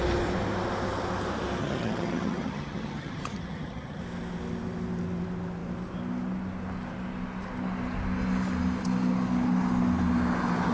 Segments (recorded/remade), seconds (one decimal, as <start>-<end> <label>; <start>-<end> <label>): 0.0-1.6 recorded; 1.6-4.0 remade; 4.0-10.7 recorded